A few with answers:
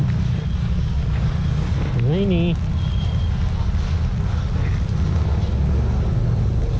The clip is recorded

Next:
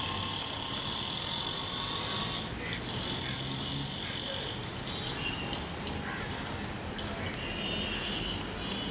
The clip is recorded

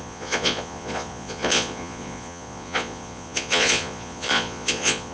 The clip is remade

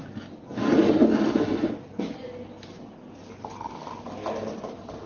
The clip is recorded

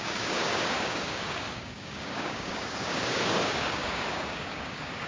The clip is remade